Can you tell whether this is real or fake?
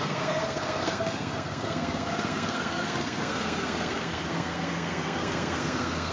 fake